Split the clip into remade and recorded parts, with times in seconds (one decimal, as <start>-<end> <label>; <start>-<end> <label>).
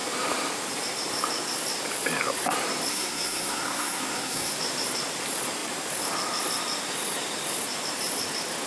0.0-2.9 recorded; 2.9-4.5 remade; 4.5-8.7 recorded